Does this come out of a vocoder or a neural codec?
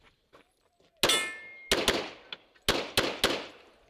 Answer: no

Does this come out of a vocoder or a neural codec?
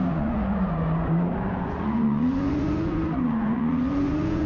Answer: yes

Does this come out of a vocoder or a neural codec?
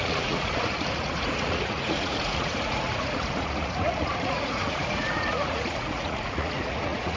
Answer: yes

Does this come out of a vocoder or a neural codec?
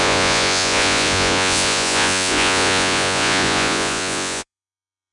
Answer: yes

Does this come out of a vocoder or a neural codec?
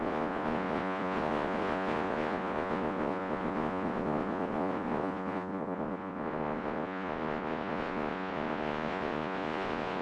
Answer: yes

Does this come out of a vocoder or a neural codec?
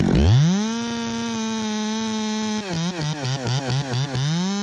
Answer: no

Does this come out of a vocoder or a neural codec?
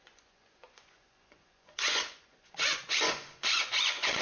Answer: yes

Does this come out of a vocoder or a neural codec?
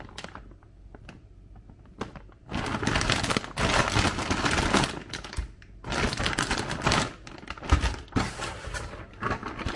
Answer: no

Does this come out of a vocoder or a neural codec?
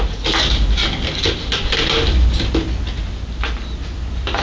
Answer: no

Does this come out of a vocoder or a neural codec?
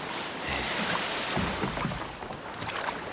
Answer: no